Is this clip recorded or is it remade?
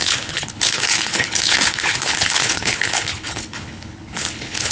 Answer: remade